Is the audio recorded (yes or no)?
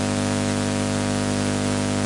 yes